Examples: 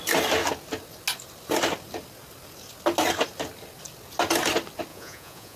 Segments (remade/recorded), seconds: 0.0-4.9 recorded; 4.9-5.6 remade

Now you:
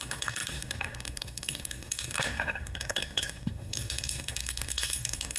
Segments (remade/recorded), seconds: 0.0-5.4 remade

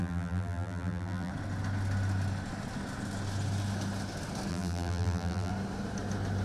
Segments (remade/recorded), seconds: 0.0-1.3 remade; 1.3-4.5 recorded; 4.5-5.5 remade; 5.5-6.4 recorded